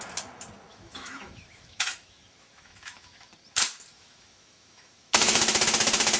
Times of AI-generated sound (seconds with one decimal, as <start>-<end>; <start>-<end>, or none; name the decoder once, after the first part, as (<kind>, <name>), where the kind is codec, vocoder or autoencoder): 0.7-3.3 (autoencoder, DAC-VAE); 3.9-5.4